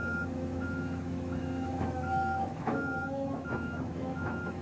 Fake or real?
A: fake